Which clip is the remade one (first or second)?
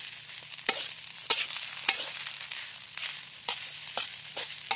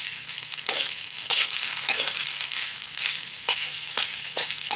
second